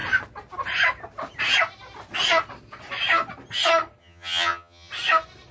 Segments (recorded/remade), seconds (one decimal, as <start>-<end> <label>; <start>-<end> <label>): 0.0-4.0 recorded; 4.0-4.9 remade; 4.9-5.5 recorded